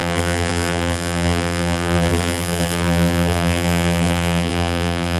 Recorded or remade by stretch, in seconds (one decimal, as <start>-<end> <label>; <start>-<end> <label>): 0.0-5.2 remade